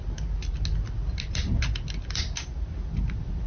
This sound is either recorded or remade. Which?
recorded